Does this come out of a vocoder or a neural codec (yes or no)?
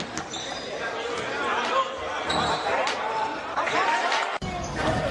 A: no